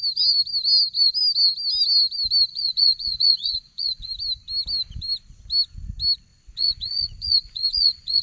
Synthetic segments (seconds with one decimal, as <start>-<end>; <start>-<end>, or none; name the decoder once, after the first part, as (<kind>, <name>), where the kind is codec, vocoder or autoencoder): 2.5-4.1 (vocoder, Vocos); 6.3-8.2